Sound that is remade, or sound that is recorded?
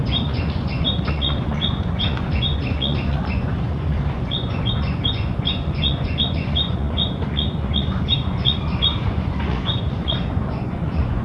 remade